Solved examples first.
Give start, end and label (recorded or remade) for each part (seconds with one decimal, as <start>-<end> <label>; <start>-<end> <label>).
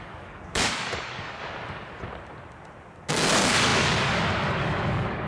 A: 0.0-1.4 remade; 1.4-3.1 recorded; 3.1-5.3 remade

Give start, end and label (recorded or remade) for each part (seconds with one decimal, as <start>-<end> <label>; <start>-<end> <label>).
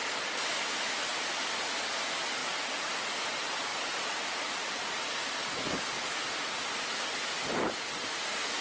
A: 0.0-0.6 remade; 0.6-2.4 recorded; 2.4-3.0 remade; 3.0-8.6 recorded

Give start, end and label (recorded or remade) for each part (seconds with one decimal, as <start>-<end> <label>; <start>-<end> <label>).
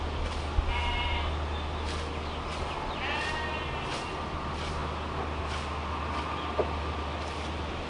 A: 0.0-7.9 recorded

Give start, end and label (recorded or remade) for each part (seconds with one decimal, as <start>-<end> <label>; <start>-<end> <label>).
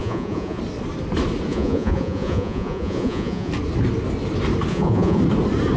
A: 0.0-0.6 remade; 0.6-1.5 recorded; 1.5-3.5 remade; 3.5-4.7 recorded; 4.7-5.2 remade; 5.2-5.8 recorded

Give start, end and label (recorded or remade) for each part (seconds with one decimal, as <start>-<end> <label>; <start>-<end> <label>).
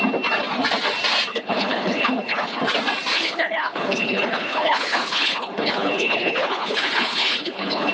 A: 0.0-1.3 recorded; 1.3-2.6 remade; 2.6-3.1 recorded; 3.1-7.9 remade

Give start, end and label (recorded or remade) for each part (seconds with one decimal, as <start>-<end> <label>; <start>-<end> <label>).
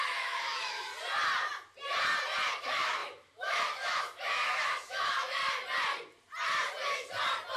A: 0.0-0.9 remade; 0.9-2.6 recorded; 2.6-5.4 remade; 5.4-7.6 recorded